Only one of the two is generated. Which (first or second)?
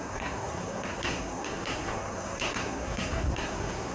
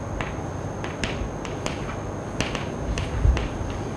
first